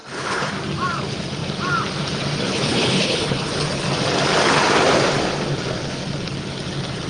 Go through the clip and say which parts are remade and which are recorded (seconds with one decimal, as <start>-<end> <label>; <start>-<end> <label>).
0.0-0.5 remade; 0.5-2.5 recorded; 2.5-3.5 remade; 3.5-7.1 recorded